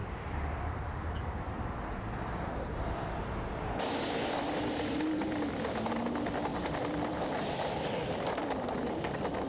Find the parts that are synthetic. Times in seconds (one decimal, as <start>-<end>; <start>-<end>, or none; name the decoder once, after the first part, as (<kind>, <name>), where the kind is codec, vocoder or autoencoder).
0.0-3.0 (vocoder, BigVGAN v2); 6.5-8.9